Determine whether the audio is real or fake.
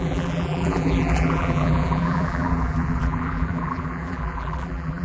fake